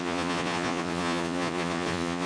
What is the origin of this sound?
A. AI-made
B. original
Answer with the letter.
A